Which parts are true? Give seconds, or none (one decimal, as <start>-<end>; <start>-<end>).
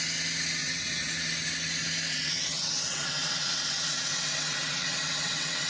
0.0-0.6; 1.1-2.1